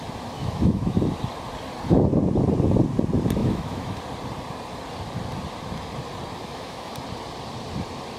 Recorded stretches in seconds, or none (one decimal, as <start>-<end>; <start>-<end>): 0.0-0.4; 1.0-3.4; 4.0-6.4; 6.9-8.2